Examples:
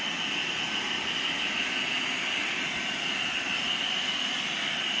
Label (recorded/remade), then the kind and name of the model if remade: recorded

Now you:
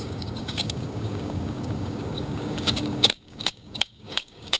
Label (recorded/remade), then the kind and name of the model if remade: remade, codec, DAC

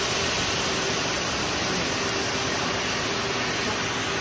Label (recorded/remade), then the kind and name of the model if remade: recorded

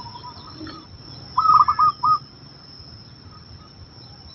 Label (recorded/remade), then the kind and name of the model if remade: recorded